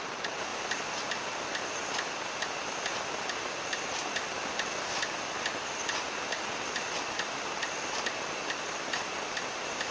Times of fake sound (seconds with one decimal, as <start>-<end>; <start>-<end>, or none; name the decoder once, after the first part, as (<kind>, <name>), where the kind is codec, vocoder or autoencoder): none